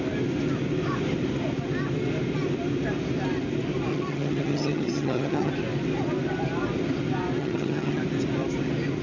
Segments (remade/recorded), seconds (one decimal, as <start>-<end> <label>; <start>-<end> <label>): 0.0-3.9 recorded; 3.9-5.5 remade; 5.5-7.4 recorded; 7.4-8.0 remade; 8.0-9.0 recorded